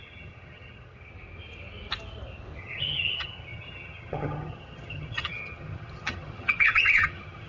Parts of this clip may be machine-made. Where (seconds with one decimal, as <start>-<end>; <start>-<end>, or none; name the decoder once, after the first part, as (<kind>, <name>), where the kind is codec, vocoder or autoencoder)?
0.0-1.1 (vocoder, HiFi-GAN); 2.6-7.5

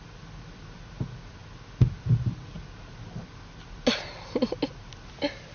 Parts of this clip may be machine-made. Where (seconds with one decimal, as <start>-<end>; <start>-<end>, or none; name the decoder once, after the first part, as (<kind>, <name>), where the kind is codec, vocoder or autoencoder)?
none